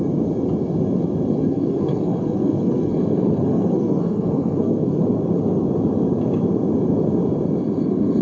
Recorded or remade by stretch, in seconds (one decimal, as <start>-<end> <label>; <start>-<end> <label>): 0.0-1.5 recorded; 1.5-5.0 remade; 5.0-8.2 recorded